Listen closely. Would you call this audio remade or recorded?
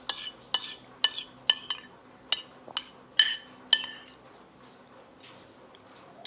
recorded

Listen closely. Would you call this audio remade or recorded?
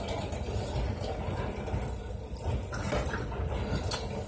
recorded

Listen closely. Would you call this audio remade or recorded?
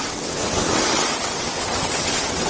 remade